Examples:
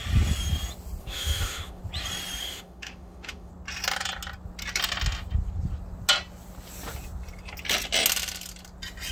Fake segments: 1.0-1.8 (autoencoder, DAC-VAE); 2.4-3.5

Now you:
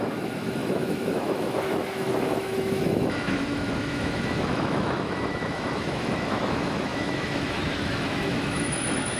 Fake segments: 0.0-9.2 (autoencoder, DAC-VAE)